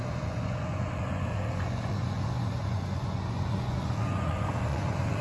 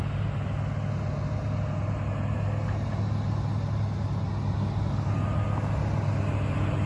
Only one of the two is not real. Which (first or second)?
first